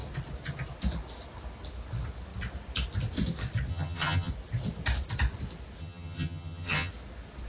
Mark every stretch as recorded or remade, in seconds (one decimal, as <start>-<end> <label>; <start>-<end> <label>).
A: 0.0-3.7 recorded; 3.7-4.3 remade; 4.3-5.8 recorded; 5.8-6.9 remade; 6.9-7.5 recorded